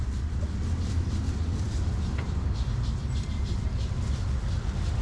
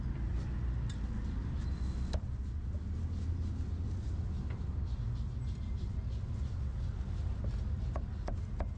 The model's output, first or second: first